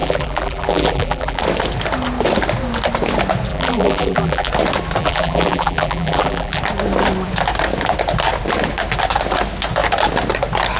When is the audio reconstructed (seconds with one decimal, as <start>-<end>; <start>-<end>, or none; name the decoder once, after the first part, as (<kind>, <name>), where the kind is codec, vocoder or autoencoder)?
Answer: 0.0-1.4 (vocoder, BigVGAN v2); 3.5-4.5; 5.0-6.6